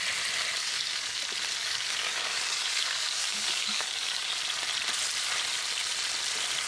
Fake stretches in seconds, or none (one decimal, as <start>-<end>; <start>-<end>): 0.6-1.2; 1.6-4.3